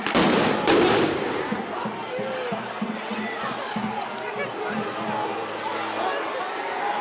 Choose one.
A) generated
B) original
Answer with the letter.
B